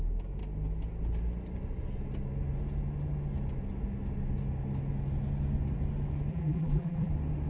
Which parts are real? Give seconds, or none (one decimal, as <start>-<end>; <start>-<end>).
0.0-6.3; 7.1-7.5